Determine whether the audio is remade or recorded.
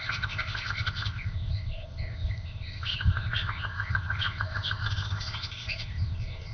remade